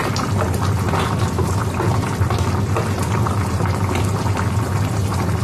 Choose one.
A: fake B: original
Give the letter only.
B